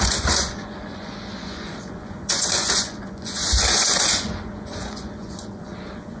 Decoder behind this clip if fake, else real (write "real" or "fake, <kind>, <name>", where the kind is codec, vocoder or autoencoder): fake, vocoder, Vocos